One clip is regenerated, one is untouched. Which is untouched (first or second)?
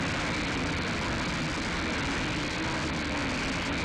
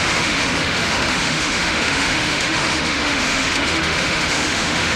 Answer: first